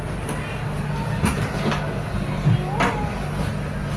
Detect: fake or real real